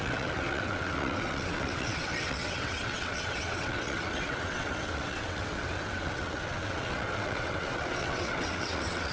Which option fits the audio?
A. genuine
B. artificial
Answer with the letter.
B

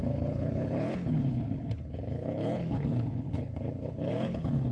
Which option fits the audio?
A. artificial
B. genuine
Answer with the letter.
A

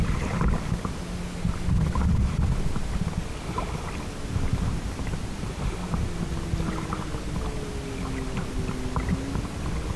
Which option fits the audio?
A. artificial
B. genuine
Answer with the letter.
B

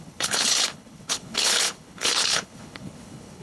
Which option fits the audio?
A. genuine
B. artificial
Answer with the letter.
B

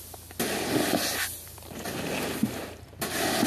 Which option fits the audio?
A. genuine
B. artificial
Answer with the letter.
A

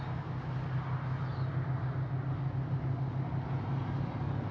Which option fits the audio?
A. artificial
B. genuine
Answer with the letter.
B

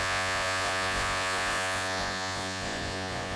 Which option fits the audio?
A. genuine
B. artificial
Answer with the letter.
B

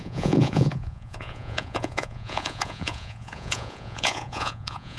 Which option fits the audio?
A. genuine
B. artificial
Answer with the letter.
B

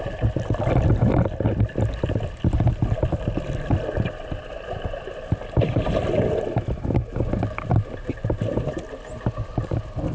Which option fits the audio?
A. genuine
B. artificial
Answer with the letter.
A